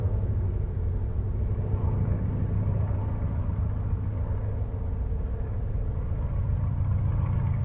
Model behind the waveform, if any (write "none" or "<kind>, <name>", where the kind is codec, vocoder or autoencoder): none